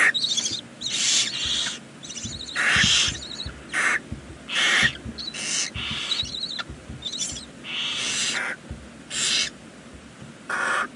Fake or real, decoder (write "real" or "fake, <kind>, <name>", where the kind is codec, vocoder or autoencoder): real